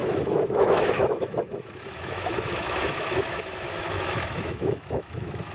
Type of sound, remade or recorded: remade